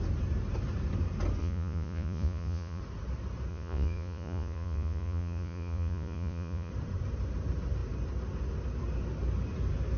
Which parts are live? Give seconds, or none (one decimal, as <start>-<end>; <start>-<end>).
0.0-1.4; 2.8-3.5; 6.7-10.0